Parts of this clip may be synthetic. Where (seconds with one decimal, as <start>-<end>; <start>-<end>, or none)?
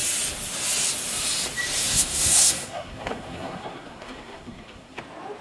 1.8-5.0